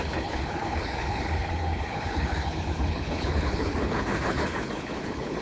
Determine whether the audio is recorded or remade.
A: remade